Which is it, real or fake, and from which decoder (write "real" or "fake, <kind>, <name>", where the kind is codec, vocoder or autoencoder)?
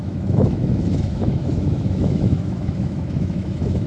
fake, autoencoder, DAC-VAE